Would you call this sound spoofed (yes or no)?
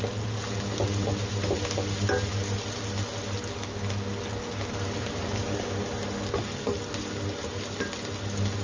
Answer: no